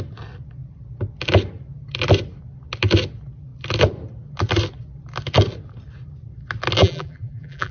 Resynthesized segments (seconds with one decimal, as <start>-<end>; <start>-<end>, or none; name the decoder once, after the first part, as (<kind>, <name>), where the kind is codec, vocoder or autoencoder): 6.8-7.7 (vocoder, BigVGAN v2)